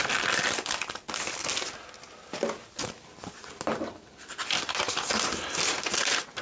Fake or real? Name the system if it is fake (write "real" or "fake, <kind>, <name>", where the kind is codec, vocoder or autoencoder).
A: real